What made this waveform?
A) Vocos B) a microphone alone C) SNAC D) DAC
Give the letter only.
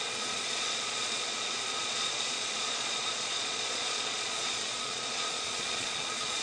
A